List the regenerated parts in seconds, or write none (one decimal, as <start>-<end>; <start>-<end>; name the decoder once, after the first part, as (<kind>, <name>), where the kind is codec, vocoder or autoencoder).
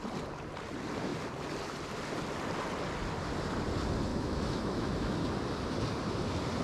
4.1-5.2 (autoencoder, DAC-VAE)